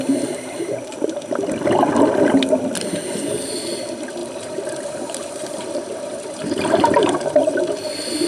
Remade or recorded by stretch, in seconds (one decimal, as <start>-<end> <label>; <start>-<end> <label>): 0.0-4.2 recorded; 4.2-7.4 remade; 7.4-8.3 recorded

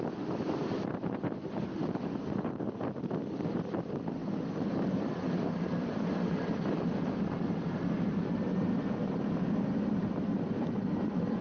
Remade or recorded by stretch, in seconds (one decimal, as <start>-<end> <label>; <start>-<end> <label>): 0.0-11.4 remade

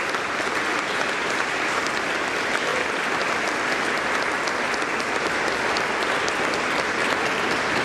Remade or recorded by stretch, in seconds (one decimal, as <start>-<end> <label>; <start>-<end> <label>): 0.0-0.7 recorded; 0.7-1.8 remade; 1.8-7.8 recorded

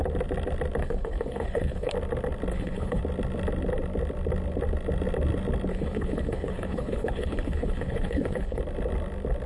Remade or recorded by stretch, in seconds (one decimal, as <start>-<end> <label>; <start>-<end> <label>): 0.0-0.8 recorded; 0.8-1.9 remade; 1.9-2.5 recorded; 2.5-3.0 remade; 3.0-5.7 recorded; 5.7-8.6 remade; 8.6-9.5 recorded

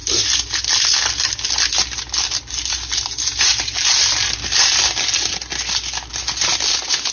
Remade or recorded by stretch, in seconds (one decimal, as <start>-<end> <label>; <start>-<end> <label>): 0.0-7.1 recorded